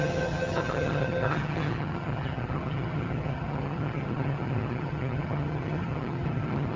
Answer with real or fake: fake